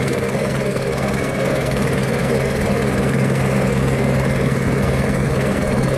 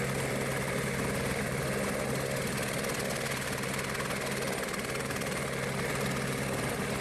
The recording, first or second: second